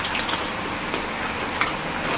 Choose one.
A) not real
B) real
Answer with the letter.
B